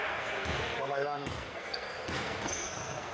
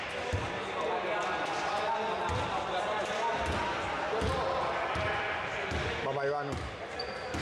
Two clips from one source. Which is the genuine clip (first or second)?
second